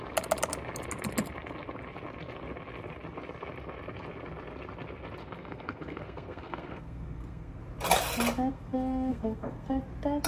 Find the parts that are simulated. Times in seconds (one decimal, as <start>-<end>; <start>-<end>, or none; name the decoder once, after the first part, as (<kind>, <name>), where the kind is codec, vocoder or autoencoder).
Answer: 5.2-7.6 (codec, SNAC); 8.5-9.8